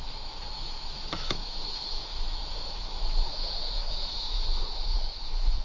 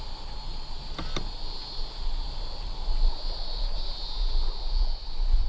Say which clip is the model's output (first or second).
first